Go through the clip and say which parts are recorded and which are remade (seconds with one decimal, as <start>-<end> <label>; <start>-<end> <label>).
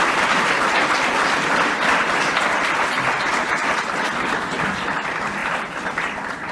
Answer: 0.0-5.4 recorded; 5.4-6.5 remade